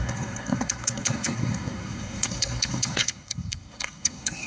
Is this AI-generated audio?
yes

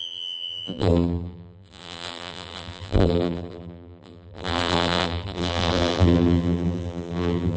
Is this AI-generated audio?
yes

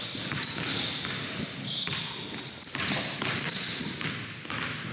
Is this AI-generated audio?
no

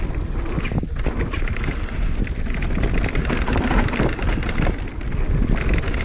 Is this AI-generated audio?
no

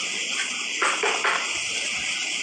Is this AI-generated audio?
no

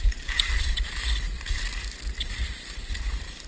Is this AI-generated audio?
no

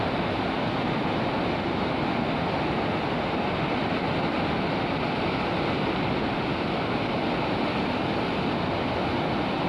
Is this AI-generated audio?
no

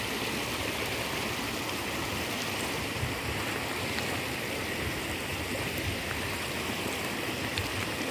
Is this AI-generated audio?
no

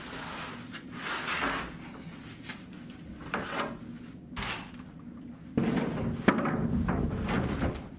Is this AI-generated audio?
no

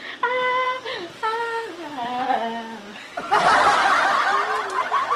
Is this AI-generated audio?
no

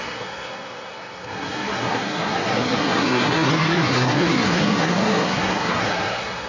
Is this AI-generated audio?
yes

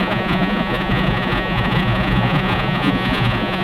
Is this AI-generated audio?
yes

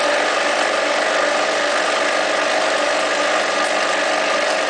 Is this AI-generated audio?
no